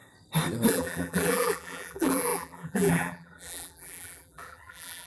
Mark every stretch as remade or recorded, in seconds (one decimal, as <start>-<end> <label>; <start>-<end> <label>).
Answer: 0.0-0.7 recorded; 0.7-5.1 remade